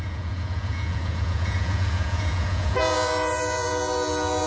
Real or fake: fake